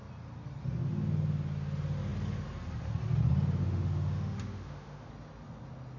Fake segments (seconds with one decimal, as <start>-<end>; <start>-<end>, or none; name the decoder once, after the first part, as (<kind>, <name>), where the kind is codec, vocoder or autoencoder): 3.6-5.1 (autoencoder, DAC-VAE)